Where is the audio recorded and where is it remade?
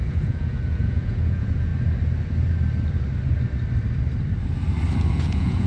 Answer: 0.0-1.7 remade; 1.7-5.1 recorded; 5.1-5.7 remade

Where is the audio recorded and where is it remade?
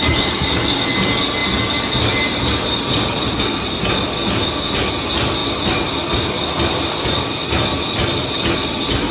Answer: 0.0-9.1 recorded